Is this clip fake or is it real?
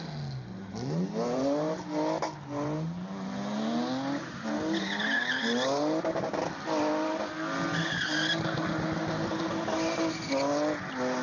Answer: real